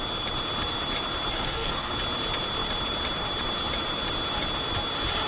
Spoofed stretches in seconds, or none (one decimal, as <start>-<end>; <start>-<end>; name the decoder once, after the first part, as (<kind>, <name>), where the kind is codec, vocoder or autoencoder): 1.3-1.9 (codec, SNAC)

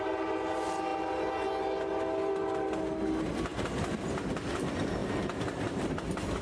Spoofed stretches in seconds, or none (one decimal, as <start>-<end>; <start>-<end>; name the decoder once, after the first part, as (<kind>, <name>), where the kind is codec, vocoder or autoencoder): none